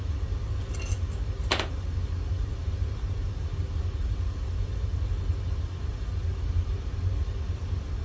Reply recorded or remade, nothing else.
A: recorded